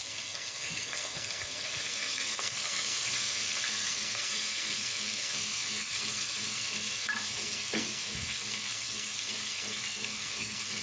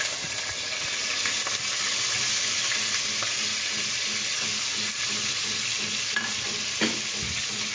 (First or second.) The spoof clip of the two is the first